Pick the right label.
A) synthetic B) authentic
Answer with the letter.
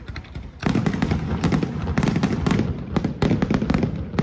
B